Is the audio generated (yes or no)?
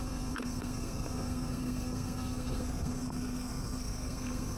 yes